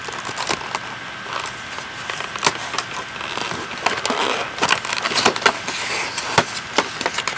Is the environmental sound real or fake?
real